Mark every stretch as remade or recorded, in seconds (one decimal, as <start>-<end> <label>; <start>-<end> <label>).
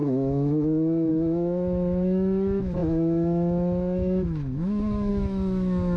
0.0-6.0 remade